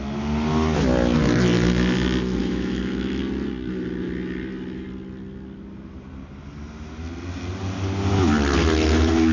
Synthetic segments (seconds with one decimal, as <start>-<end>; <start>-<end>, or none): 2.4-3.2